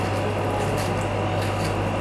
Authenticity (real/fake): real